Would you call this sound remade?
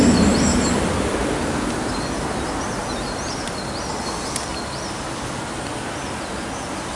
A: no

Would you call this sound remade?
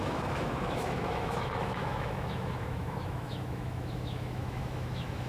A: yes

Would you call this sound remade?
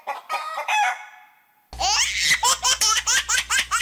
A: no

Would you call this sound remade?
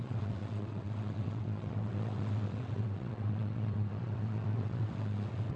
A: yes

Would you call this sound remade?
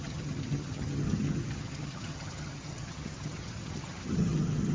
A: yes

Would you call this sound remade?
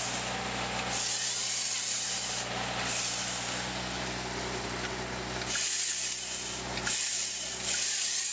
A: no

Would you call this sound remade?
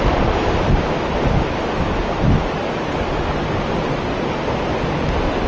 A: no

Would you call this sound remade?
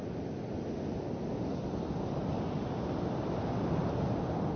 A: no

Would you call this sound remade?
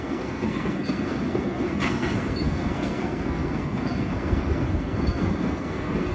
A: yes